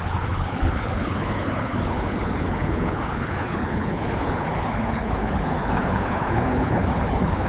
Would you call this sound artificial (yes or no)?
yes